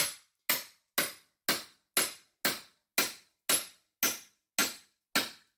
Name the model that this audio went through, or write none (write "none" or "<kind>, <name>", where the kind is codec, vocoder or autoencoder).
none